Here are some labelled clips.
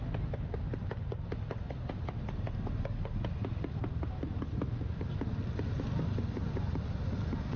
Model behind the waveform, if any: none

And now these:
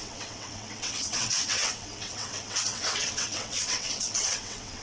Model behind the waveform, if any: vocoder, WaveNeXt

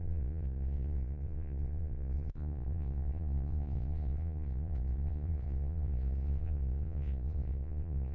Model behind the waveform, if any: vocoder, Vocos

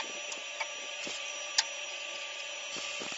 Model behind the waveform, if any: none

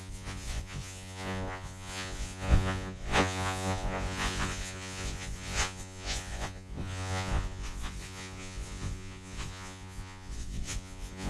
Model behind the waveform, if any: vocoder, Vocos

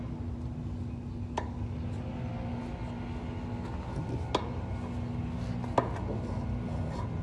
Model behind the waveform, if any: none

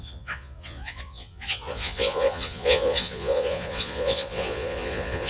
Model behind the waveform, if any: vocoder, Vocos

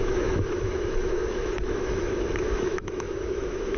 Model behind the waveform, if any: autoencoder, DAC-VAE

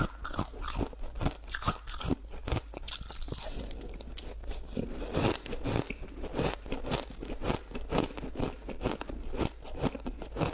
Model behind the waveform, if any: none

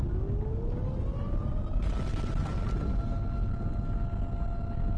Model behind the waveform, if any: none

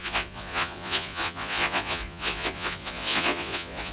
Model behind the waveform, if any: vocoder, Vocos